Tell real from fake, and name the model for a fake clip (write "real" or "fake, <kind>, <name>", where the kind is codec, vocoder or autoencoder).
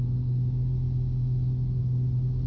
real